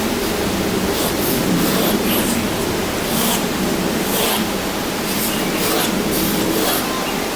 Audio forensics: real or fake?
real